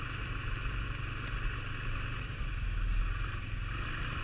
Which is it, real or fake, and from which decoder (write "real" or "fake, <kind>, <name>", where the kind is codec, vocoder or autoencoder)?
real